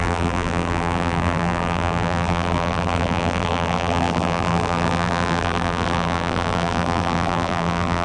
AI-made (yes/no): yes